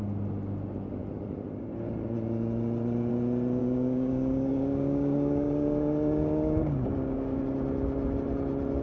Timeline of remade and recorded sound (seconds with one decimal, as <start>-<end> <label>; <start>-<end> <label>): 0.0-3.6 recorded; 3.6-7.4 remade; 7.4-8.8 recorded